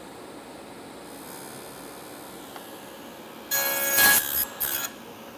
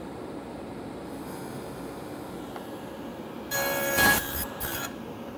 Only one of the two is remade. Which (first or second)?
second